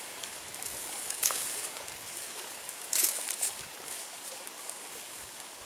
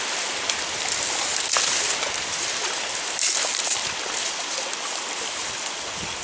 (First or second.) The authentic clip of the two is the second